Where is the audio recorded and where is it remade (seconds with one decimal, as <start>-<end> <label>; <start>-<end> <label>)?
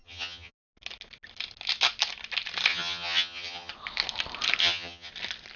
0.0-0.5 remade; 0.5-2.7 recorded; 2.7-3.7 remade; 3.7-4.6 recorded; 4.6-5.1 remade; 5.1-5.6 recorded